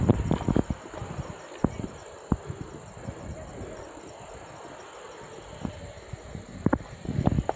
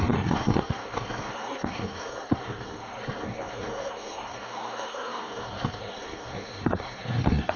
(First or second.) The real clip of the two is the first